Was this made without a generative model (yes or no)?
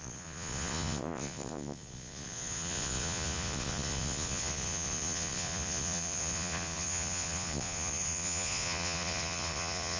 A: no